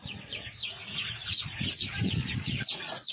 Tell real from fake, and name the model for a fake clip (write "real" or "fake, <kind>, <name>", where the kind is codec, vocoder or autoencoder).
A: fake, vocoder, Vocos